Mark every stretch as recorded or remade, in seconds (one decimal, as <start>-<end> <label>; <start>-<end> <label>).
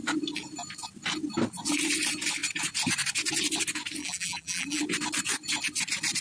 0.0-4.0 recorded; 4.0-4.8 remade; 4.8-6.2 recorded